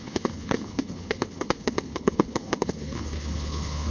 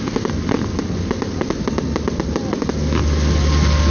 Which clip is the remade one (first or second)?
first